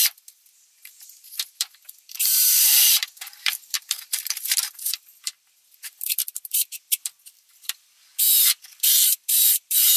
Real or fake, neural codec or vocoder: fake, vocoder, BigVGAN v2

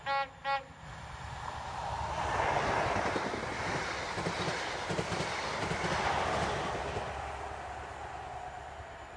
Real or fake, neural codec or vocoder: real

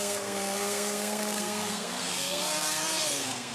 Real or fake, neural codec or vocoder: fake, codec, SNAC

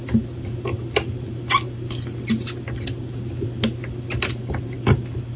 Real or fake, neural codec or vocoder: real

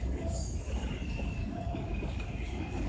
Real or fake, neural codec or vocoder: fake, codec, DAC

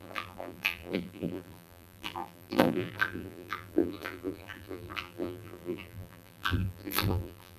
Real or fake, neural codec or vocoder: fake, vocoder, BigVGAN v2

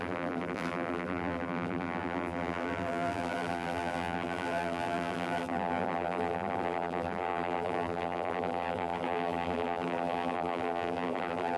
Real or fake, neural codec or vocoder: fake, vocoder, BigVGAN v2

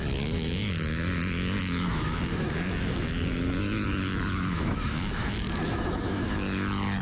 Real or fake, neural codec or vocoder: fake, autoencoder, DAC-VAE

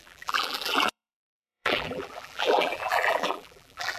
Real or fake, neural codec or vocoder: fake, vocoder, BigVGAN v2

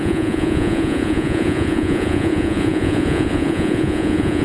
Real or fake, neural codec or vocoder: fake, vocoder, Vocos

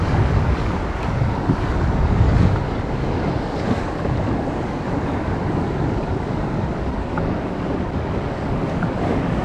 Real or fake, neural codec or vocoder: fake, codec, DAC